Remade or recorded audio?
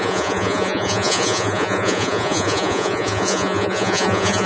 remade